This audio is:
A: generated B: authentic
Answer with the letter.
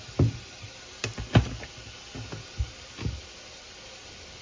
B